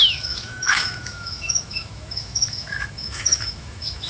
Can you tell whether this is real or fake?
fake